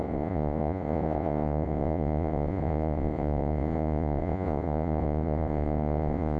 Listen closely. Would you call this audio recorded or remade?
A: remade